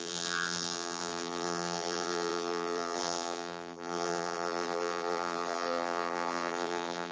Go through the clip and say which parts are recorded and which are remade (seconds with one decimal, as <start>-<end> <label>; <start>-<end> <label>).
0.0-7.1 remade